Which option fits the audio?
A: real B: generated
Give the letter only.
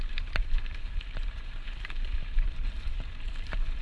B